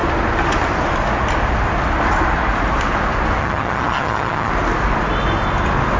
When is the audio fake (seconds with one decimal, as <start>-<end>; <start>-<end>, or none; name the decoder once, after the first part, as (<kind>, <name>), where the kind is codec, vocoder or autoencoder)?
3.4-4.5 (vocoder, HiFi-GAN)